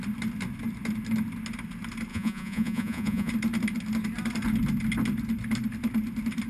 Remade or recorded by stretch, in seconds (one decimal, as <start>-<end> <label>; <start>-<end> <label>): 0.0-2.1 recorded; 2.1-3.3 remade; 3.3-6.5 recorded